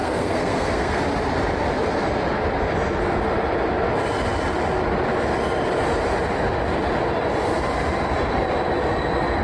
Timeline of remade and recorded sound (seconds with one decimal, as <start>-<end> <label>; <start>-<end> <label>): 0.0-1.0 remade; 1.0-9.4 recorded